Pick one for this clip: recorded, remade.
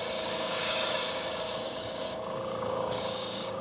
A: remade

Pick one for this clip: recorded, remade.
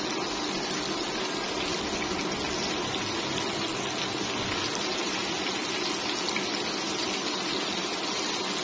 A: recorded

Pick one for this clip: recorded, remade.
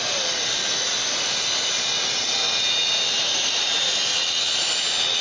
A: recorded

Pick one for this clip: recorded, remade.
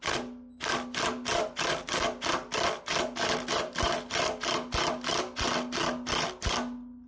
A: recorded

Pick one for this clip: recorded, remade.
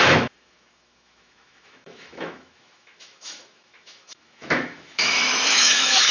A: remade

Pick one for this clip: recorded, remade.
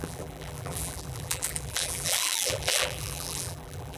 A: remade